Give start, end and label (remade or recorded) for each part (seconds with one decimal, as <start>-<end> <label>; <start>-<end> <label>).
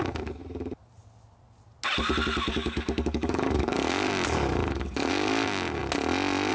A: 0.0-0.4 remade; 0.4-2.5 recorded; 2.5-5.8 remade; 5.8-6.5 recorded